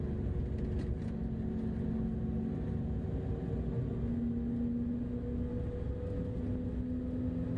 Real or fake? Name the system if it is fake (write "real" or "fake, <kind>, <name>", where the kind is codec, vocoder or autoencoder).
real